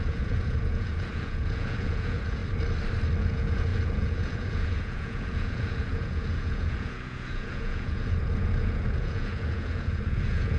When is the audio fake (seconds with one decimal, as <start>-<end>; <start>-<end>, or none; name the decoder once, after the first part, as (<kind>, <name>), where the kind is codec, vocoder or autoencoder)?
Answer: 0.0-2.4 (vocoder, Vocos); 3.2-10.6